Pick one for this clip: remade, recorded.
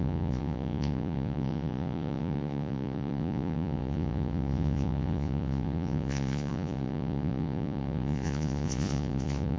remade